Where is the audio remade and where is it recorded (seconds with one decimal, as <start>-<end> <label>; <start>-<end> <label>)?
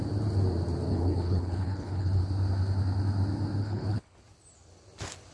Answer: 0.0-0.9 recorded; 0.9-2.2 remade; 2.2-3.6 recorded; 3.6-4.2 remade; 4.2-5.3 recorded